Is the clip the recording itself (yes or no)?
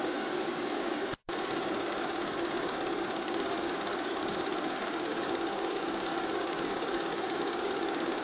no